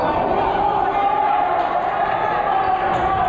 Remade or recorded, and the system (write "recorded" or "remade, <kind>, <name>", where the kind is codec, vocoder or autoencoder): recorded